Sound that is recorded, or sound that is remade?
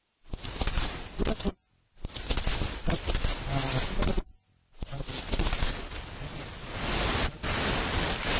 recorded